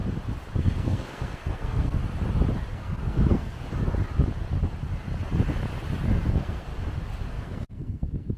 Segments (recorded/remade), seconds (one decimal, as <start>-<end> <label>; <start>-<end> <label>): 0.0-0.6 recorded; 0.6-2.0 remade; 2.0-2.7 recorded; 2.7-3.6 remade; 3.6-6.3 recorded; 6.3-6.7 remade; 6.7-7.3 recorded; 7.3-8.4 remade